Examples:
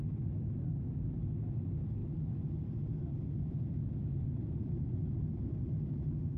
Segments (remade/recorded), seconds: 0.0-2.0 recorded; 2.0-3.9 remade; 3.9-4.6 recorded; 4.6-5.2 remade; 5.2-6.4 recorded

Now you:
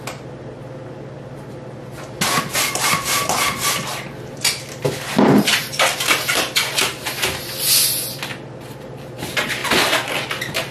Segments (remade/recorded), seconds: 0.0-3.2 recorded; 3.2-4.5 remade; 4.5-10.7 recorded

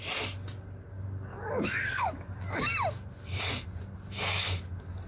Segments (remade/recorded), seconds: 0.0-1.3 recorded; 1.3-2.3 remade; 2.3-5.1 recorded

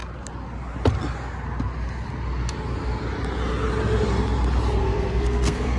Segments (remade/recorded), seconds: 0.0-4.8 recorded; 4.8-5.8 remade